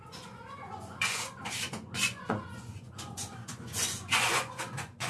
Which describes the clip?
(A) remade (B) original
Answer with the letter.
A